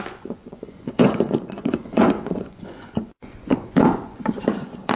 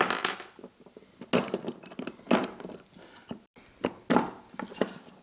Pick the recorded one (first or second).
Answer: second